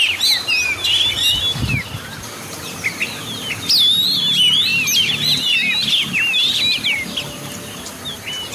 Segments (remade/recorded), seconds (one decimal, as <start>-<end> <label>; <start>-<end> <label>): 0.0-8.5 recorded

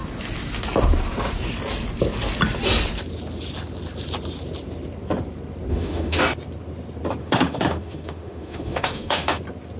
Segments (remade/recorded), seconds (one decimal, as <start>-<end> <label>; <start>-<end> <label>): 0.0-5.7 recorded; 5.7-6.2 remade; 6.2-7.2 recorded; 7.2-9.4 remade; 9.4-9.8 recorded

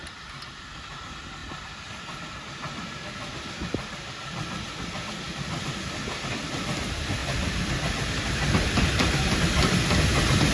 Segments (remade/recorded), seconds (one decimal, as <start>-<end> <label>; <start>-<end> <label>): 0.0-1.4 recorded; 1.4-2.4 remade; 2.4-4.2 recorded; 4.2-4.8 remade; 4.8-7.2 recorded; 7.2-7.8 remade; 7.8-10.5 recorded

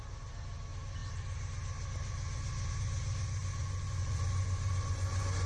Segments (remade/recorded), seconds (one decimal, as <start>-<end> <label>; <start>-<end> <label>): 0.0-3.4 recorded; 3.4-5.5 remade

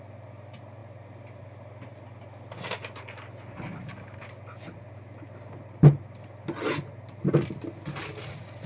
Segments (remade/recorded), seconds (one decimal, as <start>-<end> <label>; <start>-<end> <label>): 0.0-8.7 recorded

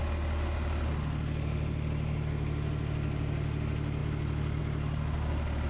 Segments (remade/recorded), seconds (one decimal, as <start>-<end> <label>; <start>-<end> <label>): 0.0-5.7 recorded

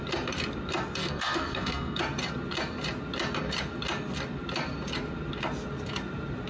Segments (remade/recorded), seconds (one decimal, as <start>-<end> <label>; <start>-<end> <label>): 0.0-1.0 recorded; 1.0-2.0 remade; 2.0-6.5 recorded

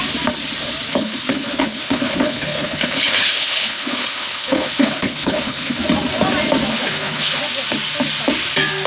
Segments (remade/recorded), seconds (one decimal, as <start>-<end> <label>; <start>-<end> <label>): 0.0-0.9 recorded; 0.9-5.8 remade; 5.8-6.7 recorded; 6.7-7.4 remade; 7.4-8.9 recorded